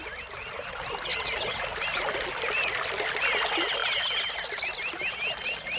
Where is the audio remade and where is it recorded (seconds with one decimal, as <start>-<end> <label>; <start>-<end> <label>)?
0.0-5.8 recorded